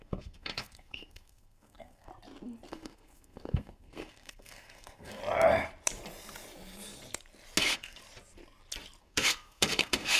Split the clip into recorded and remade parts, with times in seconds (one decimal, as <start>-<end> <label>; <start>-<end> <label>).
0.0-2.1 remade; 2.1-2.7 recorded; 2.7-5.2 remade; 5.2-7.6 recorded; 7.6-8.0 remade; 8.0-9.0 recorded; 9.0-10.2 remade